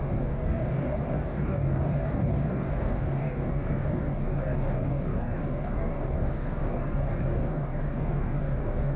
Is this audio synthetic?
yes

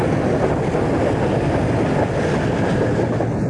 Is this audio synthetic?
no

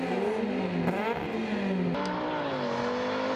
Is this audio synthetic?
no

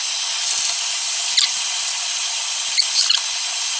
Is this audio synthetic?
no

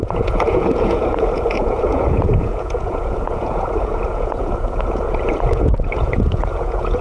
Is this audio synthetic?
yes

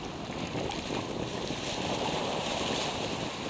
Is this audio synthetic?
no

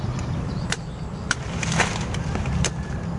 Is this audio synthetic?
yes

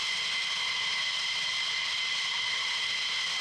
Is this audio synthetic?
no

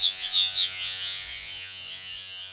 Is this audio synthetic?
yes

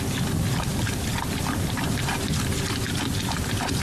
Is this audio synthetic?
no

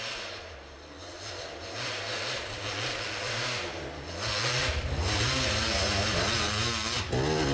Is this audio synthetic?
no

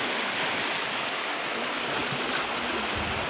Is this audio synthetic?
no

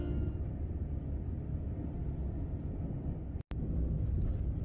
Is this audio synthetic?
no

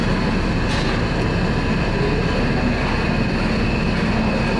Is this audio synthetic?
no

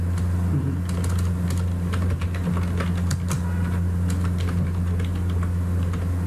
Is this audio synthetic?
no